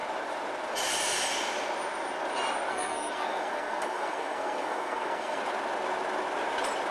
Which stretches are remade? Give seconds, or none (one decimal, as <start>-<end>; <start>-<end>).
2.7-5.4

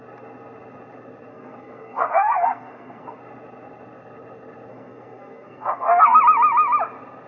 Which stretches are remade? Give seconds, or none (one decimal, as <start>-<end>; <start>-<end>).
1.3-3.2; 4.7-6.2

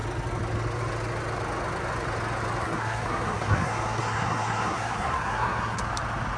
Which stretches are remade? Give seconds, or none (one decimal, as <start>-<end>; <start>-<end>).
2.6-5.8

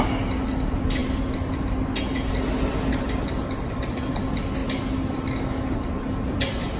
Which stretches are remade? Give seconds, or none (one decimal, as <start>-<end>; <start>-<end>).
none

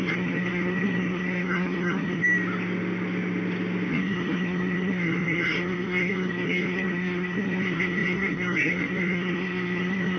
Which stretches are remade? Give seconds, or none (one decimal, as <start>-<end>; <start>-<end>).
0.0-2.2; 3.9-10.2